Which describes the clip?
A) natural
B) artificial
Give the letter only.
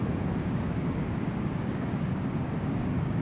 B